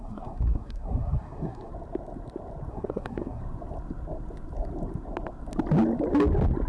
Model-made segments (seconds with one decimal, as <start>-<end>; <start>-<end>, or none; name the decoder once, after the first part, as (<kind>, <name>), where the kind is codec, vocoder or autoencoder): 0.0-1.7 (codec, SNAC); 2.7-3.4